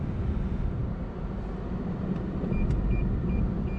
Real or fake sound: real